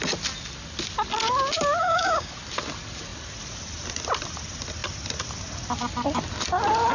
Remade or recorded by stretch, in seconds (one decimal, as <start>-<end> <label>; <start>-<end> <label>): 0.0-1.8 recorded; 1.8-2.3 remade; 2.3-6.9 recorded